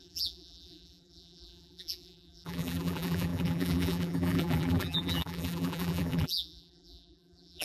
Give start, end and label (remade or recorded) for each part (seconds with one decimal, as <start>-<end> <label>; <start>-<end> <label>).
0.0-7.6 remade